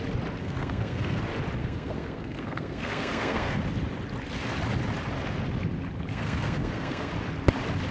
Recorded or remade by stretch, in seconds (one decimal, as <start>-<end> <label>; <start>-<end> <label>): 0.0-0.4 recorded; 0.4-1.2 remade; 1.2-1.6 recorded; 1.6-3.6 remade; 3.6-6.1 recorded; 6.1-7.1 remade; 7.1-7.9 recorded